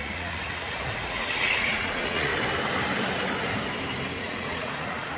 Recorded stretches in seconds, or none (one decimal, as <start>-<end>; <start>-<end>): 2.3-4.2